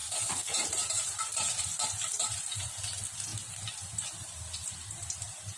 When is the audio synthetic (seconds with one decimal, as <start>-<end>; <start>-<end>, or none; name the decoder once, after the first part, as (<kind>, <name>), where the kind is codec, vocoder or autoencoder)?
0.0-2.7 (vocoder, BigVGAN v2)